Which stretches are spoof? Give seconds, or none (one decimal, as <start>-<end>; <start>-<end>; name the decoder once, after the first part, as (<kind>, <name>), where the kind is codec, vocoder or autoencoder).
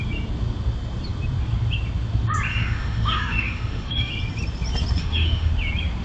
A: 2.5-4.1 (autoencoder, DAC-VAE); 5.0-5.5